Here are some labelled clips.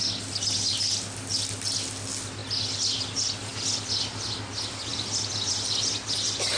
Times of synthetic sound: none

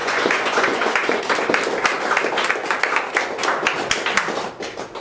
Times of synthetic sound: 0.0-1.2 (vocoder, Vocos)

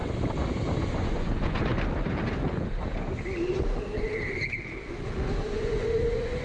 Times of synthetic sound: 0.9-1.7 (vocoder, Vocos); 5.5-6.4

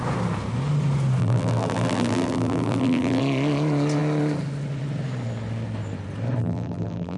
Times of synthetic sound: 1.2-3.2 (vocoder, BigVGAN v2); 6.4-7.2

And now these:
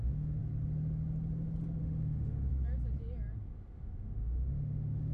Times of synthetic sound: 0.0-0.4 (autoencoder, DAC-VAE); 1.8-2.5; 3.5-5.1

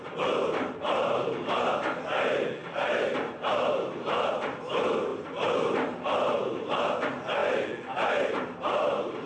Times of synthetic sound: 2.6-3.5 (vocoder, BigVGAN v2)